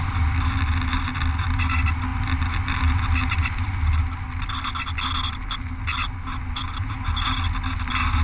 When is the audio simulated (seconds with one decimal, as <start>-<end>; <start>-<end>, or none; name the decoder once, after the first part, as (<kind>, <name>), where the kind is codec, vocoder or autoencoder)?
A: none